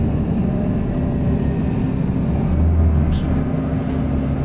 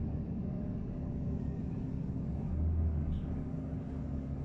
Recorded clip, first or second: first